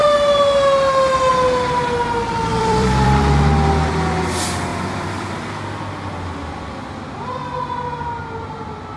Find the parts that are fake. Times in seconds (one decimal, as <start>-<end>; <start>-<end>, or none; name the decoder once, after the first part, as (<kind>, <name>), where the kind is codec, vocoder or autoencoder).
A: 2.5-3.2 (vocoder, BigVGAN v2); 4.7-5.3